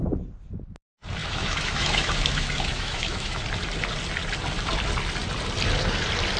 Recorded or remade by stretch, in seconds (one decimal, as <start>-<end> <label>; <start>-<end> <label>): 0.0-1.2 recorded; 1.2-3.4 remade; 3.4-6.4 recorded